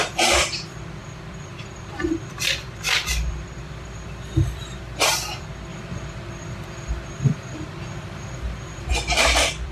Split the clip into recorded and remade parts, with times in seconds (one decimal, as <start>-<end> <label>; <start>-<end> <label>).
0.0-9.7 remade